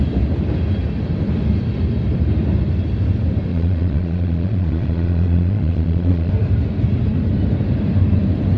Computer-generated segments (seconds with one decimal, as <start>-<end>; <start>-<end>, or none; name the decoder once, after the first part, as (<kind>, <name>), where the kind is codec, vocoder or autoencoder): 3.5-6.3 (vocoder, Vocos)